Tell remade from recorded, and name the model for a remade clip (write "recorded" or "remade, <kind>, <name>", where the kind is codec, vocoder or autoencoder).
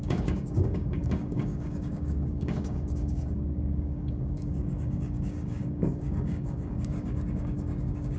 remade, codec, DAC